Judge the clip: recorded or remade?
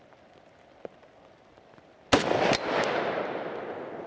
recorded